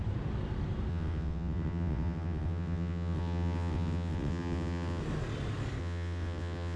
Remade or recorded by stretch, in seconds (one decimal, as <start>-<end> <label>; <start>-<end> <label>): 0.0-0.9 recorded; 0.9-5.0 remade; 5.0-5.8 recorded; 5.8-6.8 remade